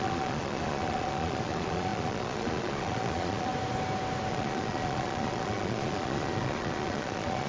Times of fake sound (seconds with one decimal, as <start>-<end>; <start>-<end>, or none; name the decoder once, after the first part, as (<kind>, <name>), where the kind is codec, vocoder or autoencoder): 0.0-3.5 (vocoder, Vocos); 4.3-7.5